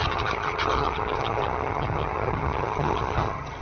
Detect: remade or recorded remade